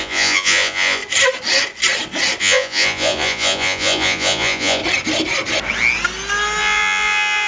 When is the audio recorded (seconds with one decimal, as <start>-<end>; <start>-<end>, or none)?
1.0-2.4; 4.8-6.6